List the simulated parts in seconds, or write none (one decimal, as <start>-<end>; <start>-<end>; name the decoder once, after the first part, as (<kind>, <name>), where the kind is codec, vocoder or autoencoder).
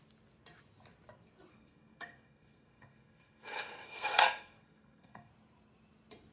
1.5-5.3 (codec, SNAC)